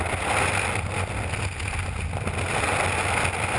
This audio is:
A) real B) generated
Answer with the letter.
A